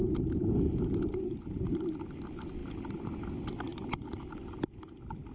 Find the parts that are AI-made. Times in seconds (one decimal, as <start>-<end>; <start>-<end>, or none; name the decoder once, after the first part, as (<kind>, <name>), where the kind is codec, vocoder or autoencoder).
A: 2.6-3.3 (vocoder, BigVGAN v2)